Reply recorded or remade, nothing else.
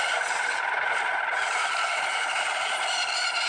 recorded